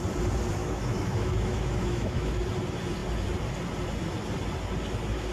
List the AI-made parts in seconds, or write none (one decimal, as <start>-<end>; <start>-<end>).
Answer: 0.6-2.4